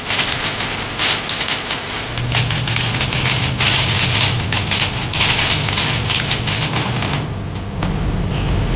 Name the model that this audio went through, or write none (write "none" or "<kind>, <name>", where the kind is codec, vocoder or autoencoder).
none